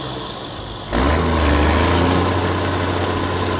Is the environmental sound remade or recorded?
recorded